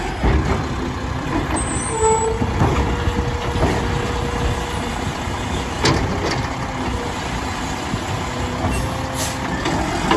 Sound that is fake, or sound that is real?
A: real